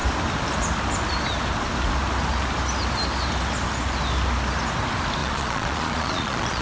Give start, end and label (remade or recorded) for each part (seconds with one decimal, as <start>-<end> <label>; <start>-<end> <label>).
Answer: 0.0-5.2 recorded; 5.2-6.6 remade